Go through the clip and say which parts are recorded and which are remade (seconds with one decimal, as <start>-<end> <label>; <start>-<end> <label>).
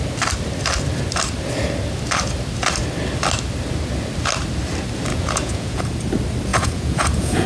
0.0-5.1 recorded; 5.1-5.8 remade; 5.8-6.5 recorded; 6.5-7.5 remade